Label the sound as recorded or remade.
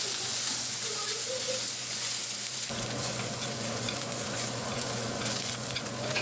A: remade